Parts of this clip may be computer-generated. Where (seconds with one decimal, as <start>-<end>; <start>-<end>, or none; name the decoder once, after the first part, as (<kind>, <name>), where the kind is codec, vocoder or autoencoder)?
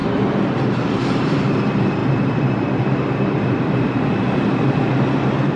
1.0-2.0 (vocoder, BigVGAN v2)